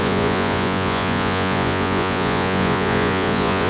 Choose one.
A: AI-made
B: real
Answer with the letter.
A